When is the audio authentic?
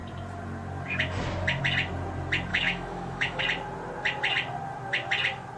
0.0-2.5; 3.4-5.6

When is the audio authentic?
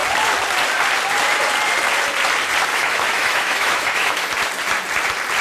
0.0-2.7; 4.3-5.4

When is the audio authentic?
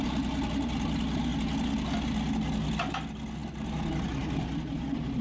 0.0-5.2